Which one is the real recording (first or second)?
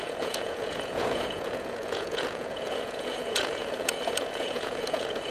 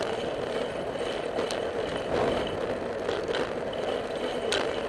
second